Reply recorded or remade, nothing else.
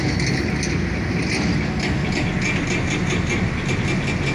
recorded